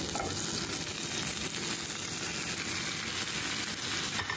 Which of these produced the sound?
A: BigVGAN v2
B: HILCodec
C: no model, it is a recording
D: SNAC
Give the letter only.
C